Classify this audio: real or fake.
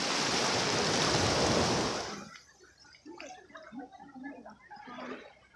real